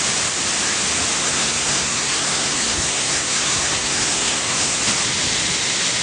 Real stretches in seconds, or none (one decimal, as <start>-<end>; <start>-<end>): 0.0-1.2; 4.8-6.0